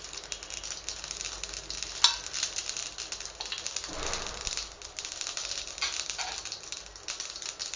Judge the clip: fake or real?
real